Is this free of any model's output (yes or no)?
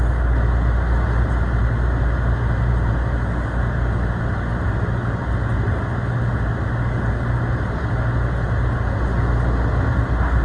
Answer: yes